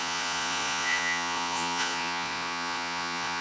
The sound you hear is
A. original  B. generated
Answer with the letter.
B